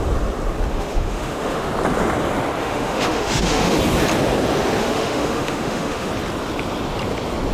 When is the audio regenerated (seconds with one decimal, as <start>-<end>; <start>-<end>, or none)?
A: 0.7-1.7; 2.6-3.8; 4.8-6.1